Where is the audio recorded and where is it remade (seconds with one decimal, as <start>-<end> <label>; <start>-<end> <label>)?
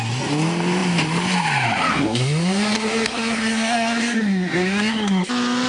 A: 0.0-1.9 recorded; 1.9-5.3 remade; 5.3-5.7 recorded